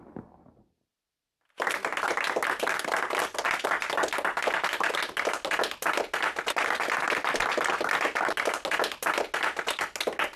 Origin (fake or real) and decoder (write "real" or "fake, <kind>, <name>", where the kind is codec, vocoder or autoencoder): real